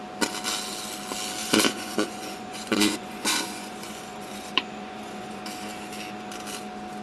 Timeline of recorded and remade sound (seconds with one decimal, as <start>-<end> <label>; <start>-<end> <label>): 0.0-1.4 recorded; 1.4-5.4 remade; 5.4-7.0 recorded

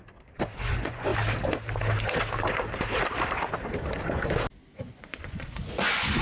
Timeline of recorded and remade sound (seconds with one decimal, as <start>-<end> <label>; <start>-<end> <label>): 0.0-0.6 recorded; 0.6-1.1 remade; 1.1-4.8 recorded; 4.8-6.2 remade

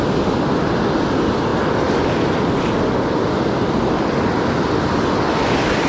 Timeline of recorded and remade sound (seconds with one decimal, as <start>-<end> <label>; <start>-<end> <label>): 0.0-5.9 recorded

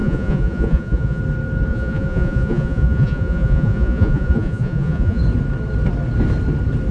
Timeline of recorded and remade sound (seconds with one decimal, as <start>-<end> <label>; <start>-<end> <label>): 0.0-1.2 remade; 1.2-1.7 recorded; 1.7-5.2 remade; 5.2-6.9 recorded

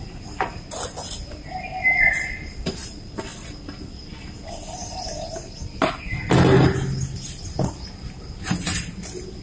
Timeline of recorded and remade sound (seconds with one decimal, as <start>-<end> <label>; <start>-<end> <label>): 0.0-9.4 recorded

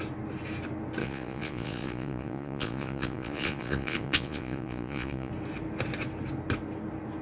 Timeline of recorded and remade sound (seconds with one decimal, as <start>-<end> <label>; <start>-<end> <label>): 0.0-1.0 recorded; 1.0-5.3 remade; 5.3-7.2 recorded

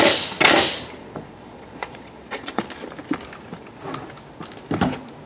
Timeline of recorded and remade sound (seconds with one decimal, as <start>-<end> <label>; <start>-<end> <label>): 0.0-1.0 recorded; 1.0-2.6 remade; 2.6-5.3 recorded

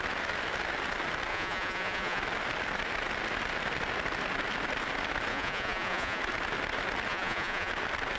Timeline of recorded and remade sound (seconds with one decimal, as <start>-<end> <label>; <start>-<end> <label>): 0.0-1.3 recorded; 1.3-2.2 remade; 2.2-5.3 recorded; 5.3-6.2 remade; 6.2-7.1 recorded; 7.1-7.7 remade; 7.7-8.2 recorded